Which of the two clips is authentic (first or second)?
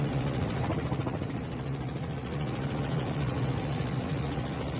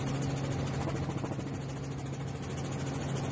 second